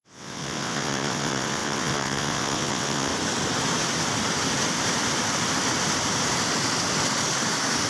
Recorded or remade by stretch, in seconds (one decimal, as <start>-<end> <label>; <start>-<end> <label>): 0.0-3.1 remade; 3.1-7.9 recorded